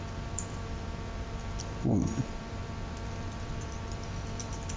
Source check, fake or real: fake